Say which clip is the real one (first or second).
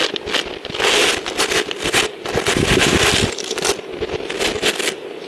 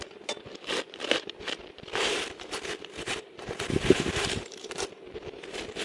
first